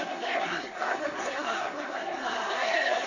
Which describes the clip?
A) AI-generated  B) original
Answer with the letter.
A